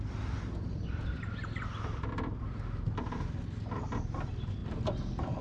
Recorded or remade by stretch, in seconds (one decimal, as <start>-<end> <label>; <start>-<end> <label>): 0.0-5.4 recorded